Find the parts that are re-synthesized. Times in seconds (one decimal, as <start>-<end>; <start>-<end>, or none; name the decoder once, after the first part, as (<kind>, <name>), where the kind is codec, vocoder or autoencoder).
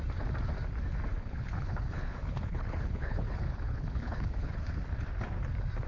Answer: 1.1-4.6 (codec, HILCodec)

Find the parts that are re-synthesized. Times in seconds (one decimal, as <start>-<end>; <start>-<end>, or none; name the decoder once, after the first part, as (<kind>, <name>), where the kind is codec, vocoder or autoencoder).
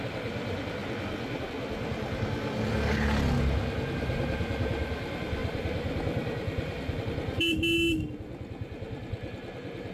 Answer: 5.4-7.0 (vocoder, BigVGAN v2)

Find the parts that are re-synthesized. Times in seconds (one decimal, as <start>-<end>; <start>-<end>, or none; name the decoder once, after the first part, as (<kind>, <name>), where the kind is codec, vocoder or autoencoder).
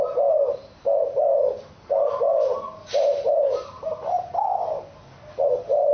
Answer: none